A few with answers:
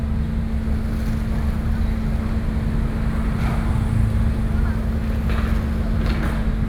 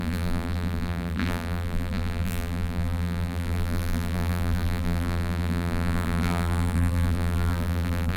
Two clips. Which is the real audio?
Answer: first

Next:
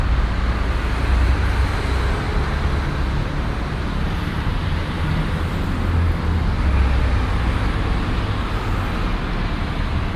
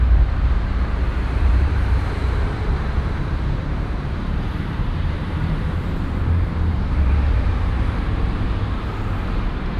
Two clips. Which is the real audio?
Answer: first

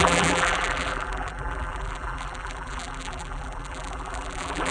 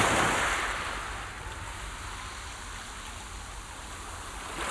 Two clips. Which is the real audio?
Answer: second